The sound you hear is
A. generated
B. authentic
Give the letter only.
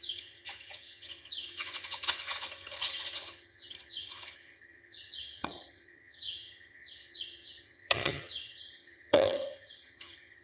A